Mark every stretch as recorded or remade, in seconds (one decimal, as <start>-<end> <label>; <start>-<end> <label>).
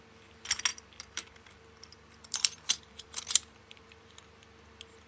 0.0-0.7 recorded; 0.7-3.8 remade; 3.8-5.1 recorded